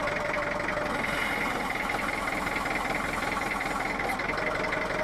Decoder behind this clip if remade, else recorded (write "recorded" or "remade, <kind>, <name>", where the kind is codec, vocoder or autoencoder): recorded